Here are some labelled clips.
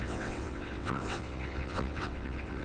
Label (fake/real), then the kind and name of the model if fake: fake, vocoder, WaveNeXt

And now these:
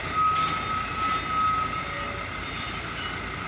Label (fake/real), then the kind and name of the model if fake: real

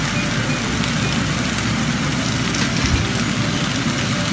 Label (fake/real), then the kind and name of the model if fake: real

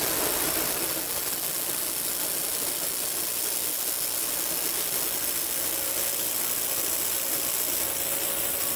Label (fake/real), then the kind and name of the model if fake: real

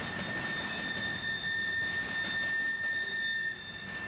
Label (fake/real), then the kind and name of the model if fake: real